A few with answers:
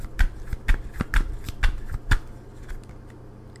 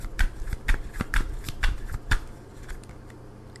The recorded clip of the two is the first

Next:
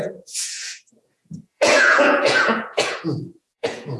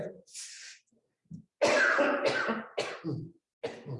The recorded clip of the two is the second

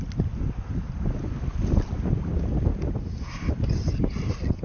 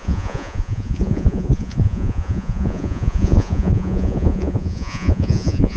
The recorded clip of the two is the first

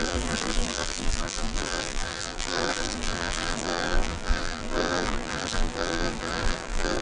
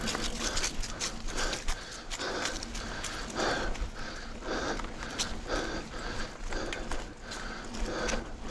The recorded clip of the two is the second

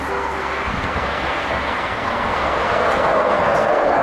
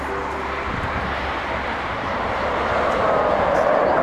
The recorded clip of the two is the second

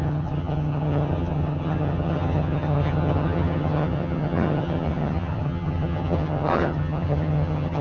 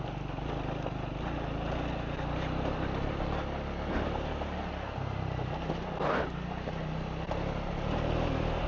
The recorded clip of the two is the second